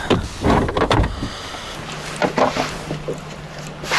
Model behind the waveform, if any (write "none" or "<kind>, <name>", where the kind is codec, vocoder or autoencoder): none